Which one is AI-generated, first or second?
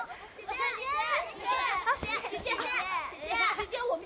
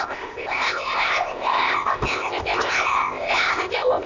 second